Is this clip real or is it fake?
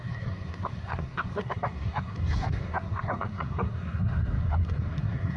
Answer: fake